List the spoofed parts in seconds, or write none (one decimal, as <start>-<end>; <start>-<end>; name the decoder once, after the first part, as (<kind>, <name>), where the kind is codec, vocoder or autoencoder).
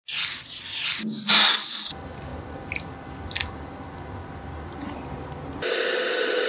2.3-3.2 (vocoder, BigVGAN v2); 4.2-6.1